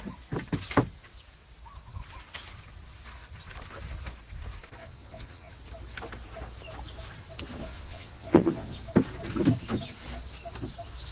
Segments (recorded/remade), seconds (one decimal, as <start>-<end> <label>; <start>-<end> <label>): 0.0-4.8 recorded; 4.8-5.5 remade; 5.5-7.6 recorded; 7.6-8.8 remade; 8.8-11.1 recorded